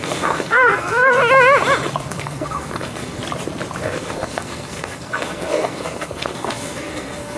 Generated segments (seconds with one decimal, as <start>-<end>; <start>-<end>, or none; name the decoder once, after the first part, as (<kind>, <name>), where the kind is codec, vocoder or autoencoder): 0.0-1.2 (codec, SNAC); 2.1-3.2; 3.8-7.4